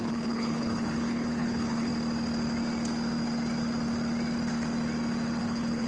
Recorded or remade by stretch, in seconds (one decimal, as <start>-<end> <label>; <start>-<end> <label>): 0.0-1.9 remade; 1.9-5.4 recorded; 5.4-5.9 remade

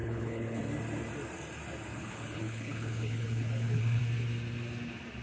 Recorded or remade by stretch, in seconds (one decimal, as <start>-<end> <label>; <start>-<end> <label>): 0.0-0.6 remade; 0.6-1.9 recorded; 1.9-4.0 remade; 4.0-5.2 recorded

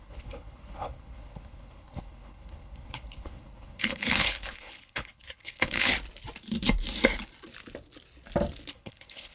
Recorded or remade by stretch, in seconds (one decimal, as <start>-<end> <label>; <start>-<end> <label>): 0.0-5.9 remade; 5.9-8.7 recorded; 8.7-9.3 remade